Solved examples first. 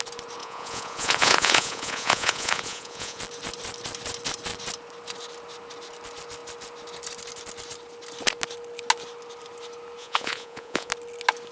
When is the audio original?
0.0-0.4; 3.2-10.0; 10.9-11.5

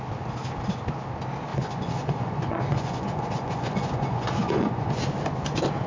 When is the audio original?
0.0-1.5; 5.0-5.9